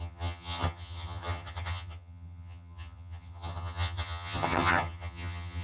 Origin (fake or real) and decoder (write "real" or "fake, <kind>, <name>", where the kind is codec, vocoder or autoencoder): fake, vocoder, HiFi-GAN